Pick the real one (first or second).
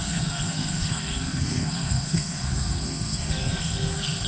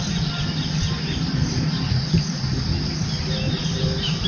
second